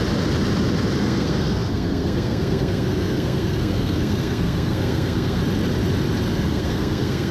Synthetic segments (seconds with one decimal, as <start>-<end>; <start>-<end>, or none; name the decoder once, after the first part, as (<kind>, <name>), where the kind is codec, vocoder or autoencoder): 1.0-5.4 (codec, SNAC); 6.3-7.3

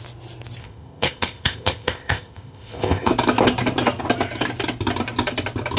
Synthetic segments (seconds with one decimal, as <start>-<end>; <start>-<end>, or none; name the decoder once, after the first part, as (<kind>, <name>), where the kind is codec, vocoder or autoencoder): 0.6-3.1 (codec, ZipCodec)

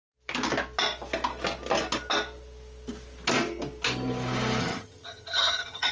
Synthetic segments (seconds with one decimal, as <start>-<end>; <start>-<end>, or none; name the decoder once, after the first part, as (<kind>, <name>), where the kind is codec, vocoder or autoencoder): 4.6-5.9 (vocoder, HiFi-GAN)

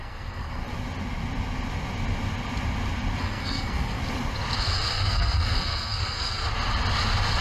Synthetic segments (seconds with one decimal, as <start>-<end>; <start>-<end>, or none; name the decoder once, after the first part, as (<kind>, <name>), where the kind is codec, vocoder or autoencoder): 0.0-0.6 (codec, SNAC); 3.2-4.0; 4.9-6.4

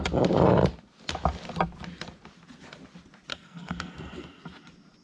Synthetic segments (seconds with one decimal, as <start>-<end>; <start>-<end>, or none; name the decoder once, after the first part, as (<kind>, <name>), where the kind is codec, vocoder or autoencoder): 3.3-4.4 (codec, SNAC)

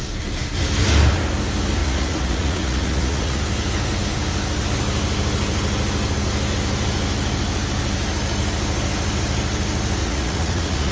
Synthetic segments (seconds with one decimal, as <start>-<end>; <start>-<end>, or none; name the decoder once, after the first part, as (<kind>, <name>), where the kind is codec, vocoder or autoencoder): 1.8-3.4 (vocoder, Vocos); 10.0-10.9